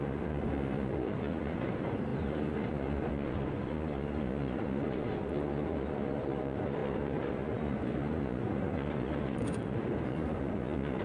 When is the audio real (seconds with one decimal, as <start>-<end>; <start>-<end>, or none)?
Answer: none